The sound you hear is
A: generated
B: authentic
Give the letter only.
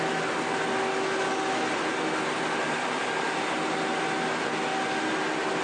B